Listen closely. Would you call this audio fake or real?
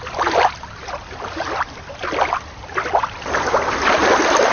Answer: real